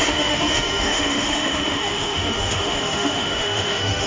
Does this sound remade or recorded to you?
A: remade